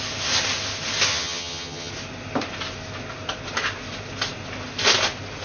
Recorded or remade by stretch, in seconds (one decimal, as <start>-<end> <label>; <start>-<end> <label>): 0.0-1.1 recorded; 1.1-1.9 remade; 1.9-5.4 recorded